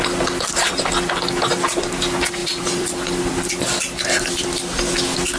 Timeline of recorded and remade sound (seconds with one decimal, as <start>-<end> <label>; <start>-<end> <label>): 0.0-2.4 recorded; 2.4-3.3 remade; 3.3-5.4 recorded